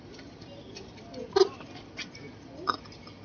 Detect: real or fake real